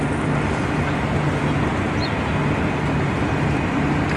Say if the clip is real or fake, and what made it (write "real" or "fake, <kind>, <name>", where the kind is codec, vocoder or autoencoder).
real